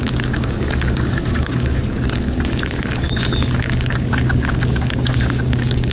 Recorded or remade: remade